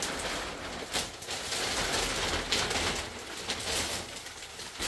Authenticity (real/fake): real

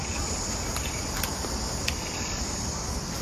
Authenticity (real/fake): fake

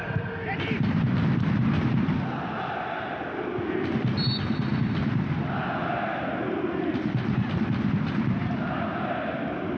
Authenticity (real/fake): fake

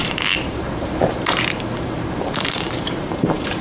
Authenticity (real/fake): fake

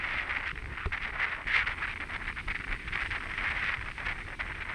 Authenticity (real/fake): real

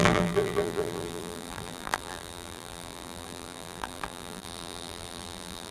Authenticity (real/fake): fake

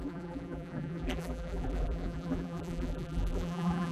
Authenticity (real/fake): fake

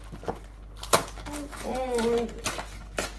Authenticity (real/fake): real